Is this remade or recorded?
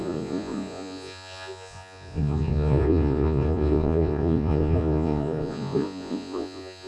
remade